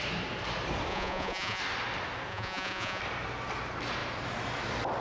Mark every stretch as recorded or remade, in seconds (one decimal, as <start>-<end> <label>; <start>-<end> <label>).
0.0-0.9 recorded; 0.9-1.6 remade; 1.6-2.3 recorded; 2.3-3.0 remade; 3.0-5.0 recorded